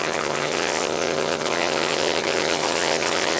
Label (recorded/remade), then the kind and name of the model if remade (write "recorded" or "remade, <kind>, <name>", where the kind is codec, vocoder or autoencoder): remade, vocoder, HiFi-GAN